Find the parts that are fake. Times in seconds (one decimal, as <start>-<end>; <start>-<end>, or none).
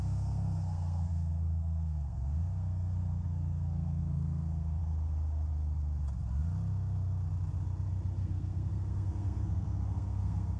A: 0.0-4.8; 8.2-10.6